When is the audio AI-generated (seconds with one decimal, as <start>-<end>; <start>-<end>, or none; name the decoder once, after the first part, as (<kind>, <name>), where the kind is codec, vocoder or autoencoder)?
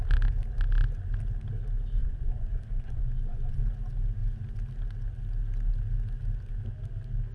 2.0-3.6 (vocoder, Vocos)